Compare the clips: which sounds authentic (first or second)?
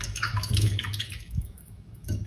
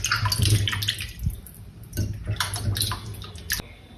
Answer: second